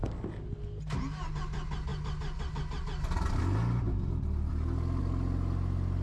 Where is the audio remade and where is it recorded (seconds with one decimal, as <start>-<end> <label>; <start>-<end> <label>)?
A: 0.0-6.0 recorded